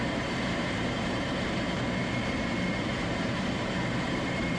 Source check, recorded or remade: remade